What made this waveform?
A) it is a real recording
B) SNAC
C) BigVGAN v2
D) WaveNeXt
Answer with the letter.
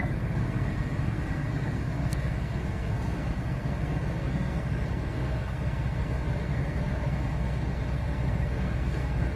B